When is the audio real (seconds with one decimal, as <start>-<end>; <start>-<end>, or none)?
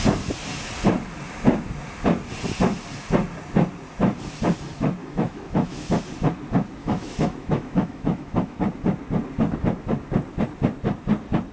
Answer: 0.0-5.0; 6.0-6.8; 8.6-11.5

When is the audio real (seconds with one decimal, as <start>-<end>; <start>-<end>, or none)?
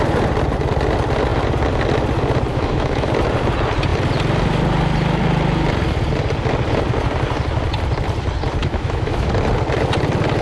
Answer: 0.0-2.5; 3.1-8.6; 9.3-10.4